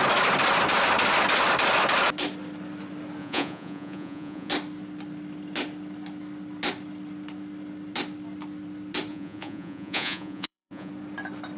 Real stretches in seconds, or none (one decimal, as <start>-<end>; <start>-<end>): 0.0-3.2; 4.5-9.1; 10.9-11.6